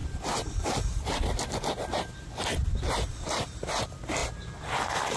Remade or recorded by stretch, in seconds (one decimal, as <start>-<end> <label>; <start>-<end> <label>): 0.0-4.2 remade; 4.2-4.8 recorded; 4.8-5.2 remade